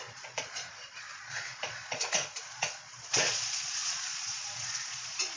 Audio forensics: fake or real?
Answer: fake